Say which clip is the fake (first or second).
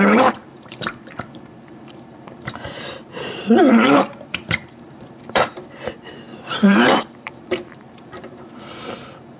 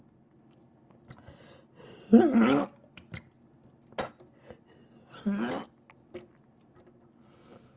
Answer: first